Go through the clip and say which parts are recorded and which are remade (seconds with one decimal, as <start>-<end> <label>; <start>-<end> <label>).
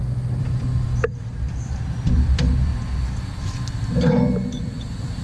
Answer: 0.0-2.7 remade; 2.7-3.5 recorded; 3.5-5.2 remade